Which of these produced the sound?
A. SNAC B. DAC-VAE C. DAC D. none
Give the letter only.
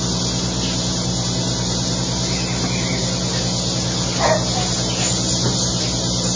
D